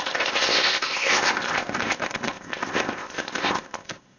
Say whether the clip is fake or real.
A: fake